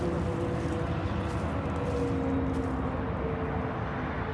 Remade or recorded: recorded